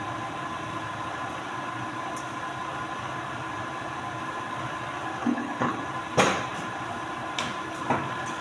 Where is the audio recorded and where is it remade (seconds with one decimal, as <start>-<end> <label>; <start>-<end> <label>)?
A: 0.0-5.2 recorded; 5.2-5.8 remade; 5.8-8.4 recorded